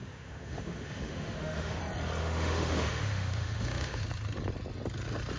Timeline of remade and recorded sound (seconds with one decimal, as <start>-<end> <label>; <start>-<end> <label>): 0.0-1.8 remade; 1.8-2.2 recorded; 2.2-4.0 remade; 4.0-5.4 recorded